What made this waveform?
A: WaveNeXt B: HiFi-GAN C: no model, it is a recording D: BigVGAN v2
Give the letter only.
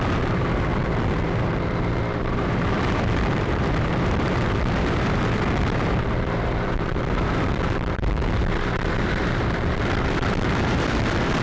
D